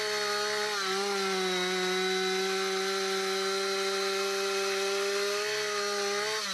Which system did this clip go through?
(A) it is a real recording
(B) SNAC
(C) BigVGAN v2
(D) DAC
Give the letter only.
A